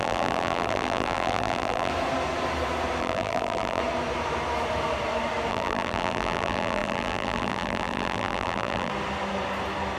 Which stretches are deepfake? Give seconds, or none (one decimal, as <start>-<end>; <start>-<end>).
0.0-1.9; 3.0-3.8; 5.5-8.9